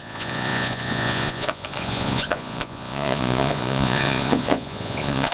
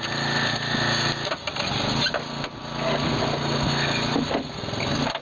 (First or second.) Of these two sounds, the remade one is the first